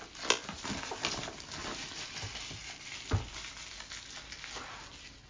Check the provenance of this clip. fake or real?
real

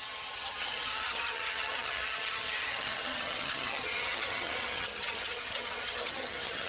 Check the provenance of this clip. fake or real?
fake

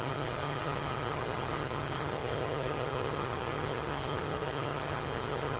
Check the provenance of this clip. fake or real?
fake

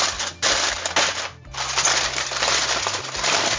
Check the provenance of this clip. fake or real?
real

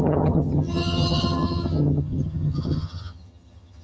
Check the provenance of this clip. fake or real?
fake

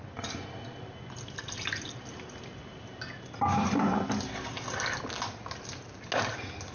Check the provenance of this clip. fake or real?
real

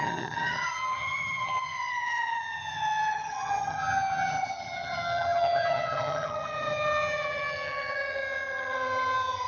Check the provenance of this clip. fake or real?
fake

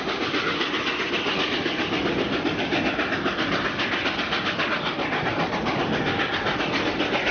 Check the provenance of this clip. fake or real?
real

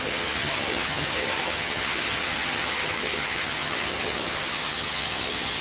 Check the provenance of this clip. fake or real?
fake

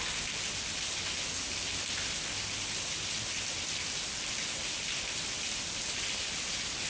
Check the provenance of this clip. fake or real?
real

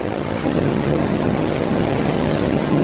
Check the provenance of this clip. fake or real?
fake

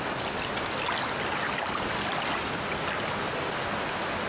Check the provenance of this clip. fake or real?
real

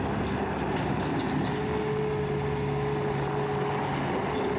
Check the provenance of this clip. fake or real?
real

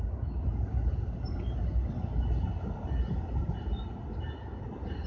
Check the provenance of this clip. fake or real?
real